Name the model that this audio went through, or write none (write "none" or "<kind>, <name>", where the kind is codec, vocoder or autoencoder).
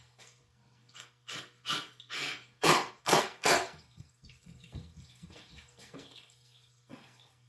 codec, SNAC